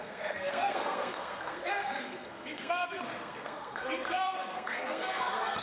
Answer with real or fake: fake